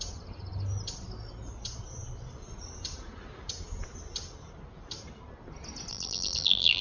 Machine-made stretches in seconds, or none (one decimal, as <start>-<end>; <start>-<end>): 5.9-6.8